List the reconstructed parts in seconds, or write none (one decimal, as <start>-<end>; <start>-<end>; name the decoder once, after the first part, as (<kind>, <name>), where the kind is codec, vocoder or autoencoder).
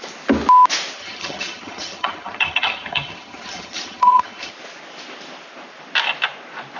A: 1.0-4.5 (vocoder, HiFi-GAN)